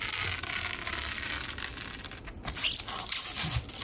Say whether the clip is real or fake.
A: real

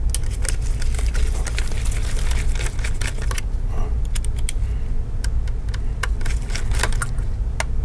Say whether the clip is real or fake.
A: real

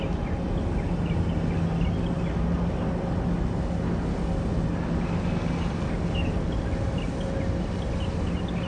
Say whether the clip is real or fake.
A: real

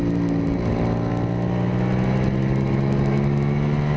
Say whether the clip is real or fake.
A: real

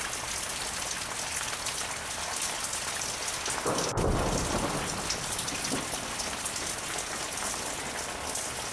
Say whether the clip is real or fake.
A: real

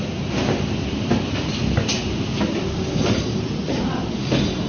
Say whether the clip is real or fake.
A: real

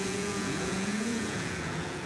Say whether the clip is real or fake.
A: fake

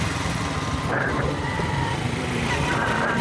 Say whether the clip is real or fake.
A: real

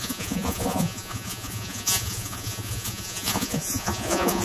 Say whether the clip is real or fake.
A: fake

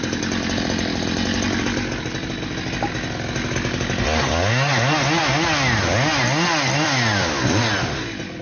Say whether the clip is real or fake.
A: real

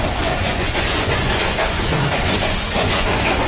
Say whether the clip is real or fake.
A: fake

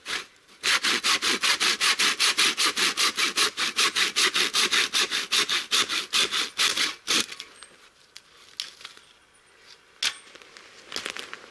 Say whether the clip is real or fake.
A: real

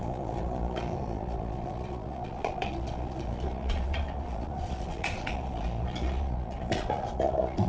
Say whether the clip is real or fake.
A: fake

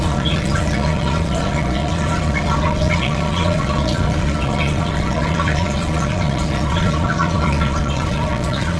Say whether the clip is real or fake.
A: fake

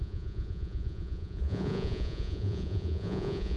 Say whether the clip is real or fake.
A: fake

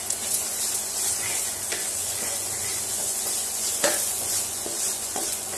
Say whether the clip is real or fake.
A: fake